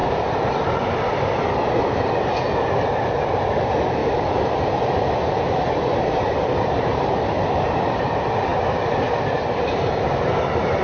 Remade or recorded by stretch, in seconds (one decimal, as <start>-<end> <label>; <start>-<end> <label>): 0.0-1.5 remade; 1.5-4.0 recorded; 4.0-8.1 remade; 8.1-10.8 recorded